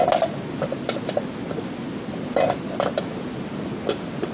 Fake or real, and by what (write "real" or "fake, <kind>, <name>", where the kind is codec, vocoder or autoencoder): real